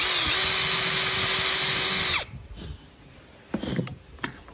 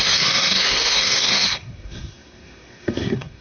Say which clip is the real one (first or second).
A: first